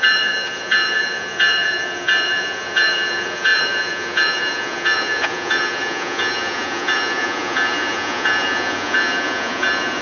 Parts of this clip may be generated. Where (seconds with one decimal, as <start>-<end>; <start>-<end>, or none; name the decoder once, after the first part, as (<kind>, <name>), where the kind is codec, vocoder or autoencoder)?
0.0-10.0 (vocoder, Vocos)